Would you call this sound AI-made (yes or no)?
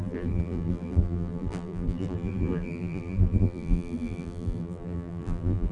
yes